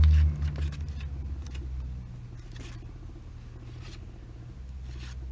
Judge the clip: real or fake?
real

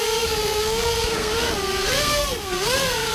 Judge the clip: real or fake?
fake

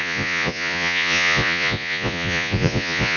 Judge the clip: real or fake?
fake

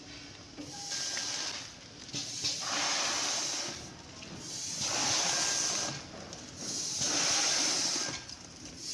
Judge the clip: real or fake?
real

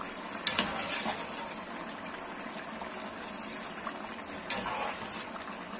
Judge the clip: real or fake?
real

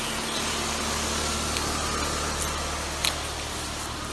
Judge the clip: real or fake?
real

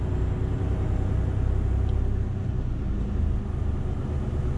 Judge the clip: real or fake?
real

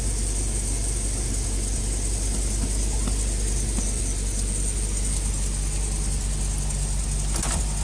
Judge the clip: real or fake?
real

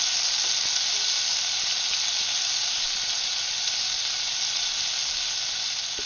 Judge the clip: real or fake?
real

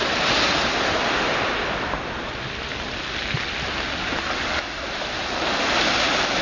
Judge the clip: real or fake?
real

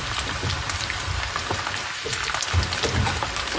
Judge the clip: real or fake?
real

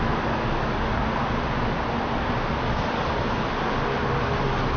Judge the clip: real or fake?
real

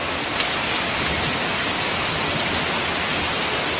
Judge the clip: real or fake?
real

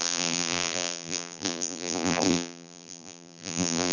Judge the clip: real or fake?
fake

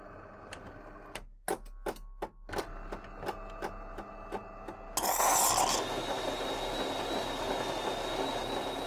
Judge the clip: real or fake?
real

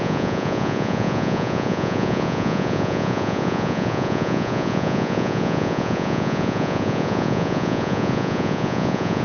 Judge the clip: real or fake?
fake